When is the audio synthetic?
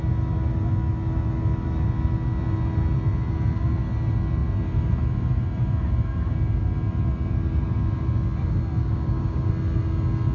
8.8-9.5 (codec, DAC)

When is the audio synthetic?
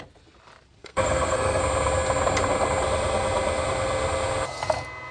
0.8-1.6 (codec, SNAC)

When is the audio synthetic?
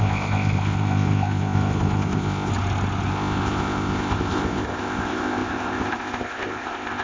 0.0-2.5 (codec, ZipCodec); 3.1-7.0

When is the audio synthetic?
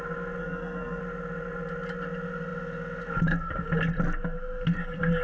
0.4-1.0 (codec, SNAC)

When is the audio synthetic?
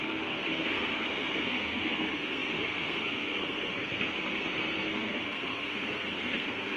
0.0-6.8 (codec, SNAC)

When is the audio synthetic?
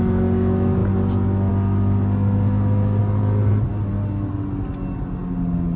none